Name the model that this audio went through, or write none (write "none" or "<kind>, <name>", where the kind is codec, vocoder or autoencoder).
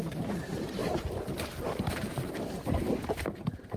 vocoder, BigVGAN v2